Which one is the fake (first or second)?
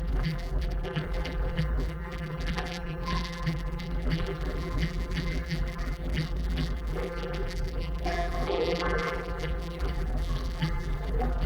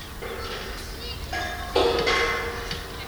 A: first